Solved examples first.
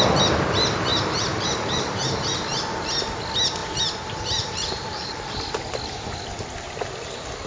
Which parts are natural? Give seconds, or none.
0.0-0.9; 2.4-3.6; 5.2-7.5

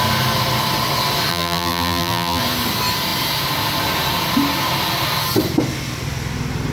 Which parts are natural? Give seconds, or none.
0.0-1.3; 2.4-6.7

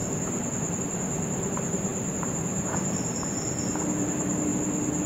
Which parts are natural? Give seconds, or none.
4.5-5.1

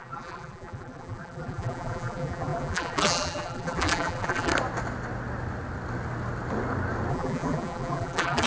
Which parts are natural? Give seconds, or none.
4.5-7.1

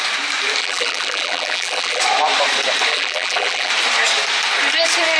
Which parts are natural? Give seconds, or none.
0.0-0.6; 2.0-2.9; 3.7-5.2